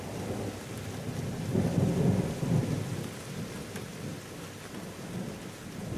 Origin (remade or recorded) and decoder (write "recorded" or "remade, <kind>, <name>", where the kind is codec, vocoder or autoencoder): recorded